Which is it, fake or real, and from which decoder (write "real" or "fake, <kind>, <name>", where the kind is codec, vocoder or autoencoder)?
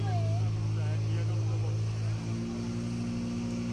real